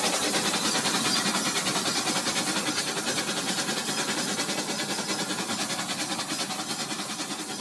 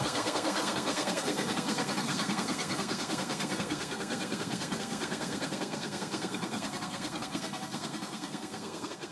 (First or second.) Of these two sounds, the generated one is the second